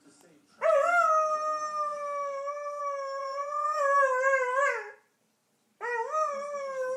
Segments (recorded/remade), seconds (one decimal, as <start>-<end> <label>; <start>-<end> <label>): 0.0-3.2 recorded; 3.2-3.8 remade; 3.8-7.0 recorded